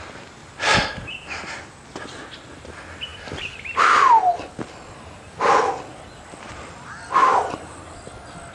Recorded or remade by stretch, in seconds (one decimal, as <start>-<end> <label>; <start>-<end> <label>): 0.0-0.4 recorded; 0.4-1.6 remade; 1.6-7.2 recorded; 7.2-7.9 remade; 7.9-8.5 recorded

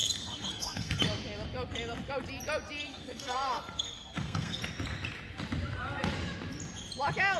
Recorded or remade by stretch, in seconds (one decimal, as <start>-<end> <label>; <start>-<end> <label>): 0.0-1.0 remade; 1.0-2.9 recorded; 2.9-4.6 remade; 4.6-7.4 recorded

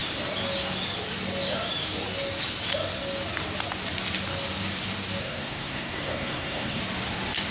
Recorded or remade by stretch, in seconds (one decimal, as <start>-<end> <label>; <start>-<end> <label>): 0.0-5.2 recorded; 5.2-6.8 remade; 6.8-7.5 recorded